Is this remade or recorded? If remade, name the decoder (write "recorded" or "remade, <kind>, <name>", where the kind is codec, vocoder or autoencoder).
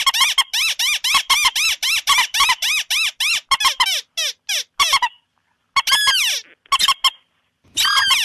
recorded